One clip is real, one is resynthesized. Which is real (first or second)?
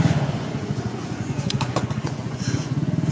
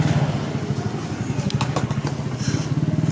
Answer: second